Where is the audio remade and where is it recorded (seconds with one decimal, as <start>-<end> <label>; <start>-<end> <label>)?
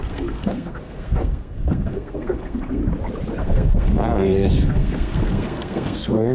0.0-2.8 remade; 2.8-3.4 recorded; 3.4-6.3 remade